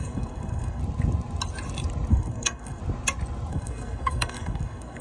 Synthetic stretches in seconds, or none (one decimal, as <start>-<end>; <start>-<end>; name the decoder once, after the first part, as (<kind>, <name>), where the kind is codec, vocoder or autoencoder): 0.0-0.8 (codec, SNAC); 2.1-2.8; 3.5-5.0